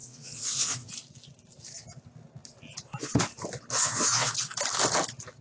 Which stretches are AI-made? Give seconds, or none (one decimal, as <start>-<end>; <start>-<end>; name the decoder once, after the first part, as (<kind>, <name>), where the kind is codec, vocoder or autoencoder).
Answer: 0.0-0.9 (vocoder, WaveNeXt); 3.7-4.3